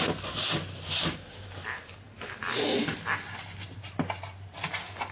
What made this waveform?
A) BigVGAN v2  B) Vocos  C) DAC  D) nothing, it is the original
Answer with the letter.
D